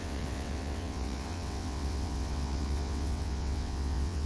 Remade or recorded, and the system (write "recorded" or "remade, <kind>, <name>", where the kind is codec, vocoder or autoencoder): remade, vocoder, WaveNeXt